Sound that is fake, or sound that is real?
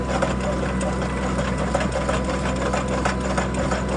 real